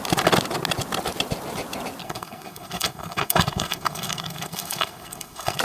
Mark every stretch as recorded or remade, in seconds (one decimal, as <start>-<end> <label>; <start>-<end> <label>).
0.0-2.0 recorded; 2.0-5.6 remade